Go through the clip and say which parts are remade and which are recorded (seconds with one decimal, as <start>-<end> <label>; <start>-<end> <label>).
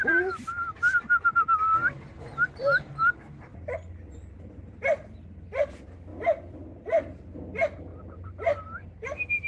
0.0-7.9 recorded; 7.9-8.9 remade; 8.9-9.5 recorded